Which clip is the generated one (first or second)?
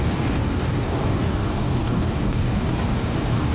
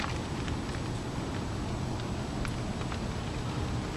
first